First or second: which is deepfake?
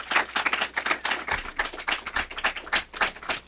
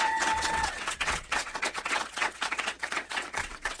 second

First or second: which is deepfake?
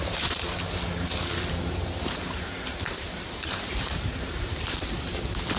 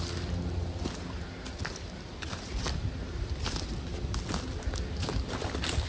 first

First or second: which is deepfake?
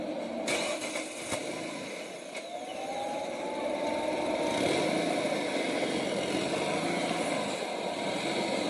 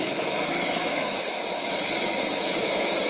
second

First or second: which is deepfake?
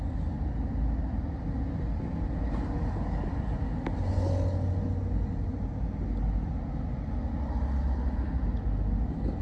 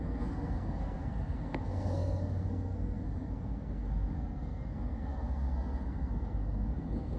second